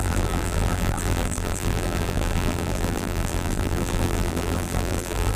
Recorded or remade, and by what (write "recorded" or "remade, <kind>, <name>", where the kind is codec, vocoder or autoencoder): remade, vocoder, BigVGAN v2